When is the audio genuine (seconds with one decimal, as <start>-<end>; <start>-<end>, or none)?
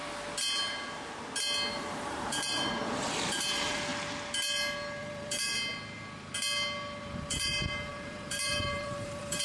0.0-1.7; 3.9-5.0; 5.5-7.0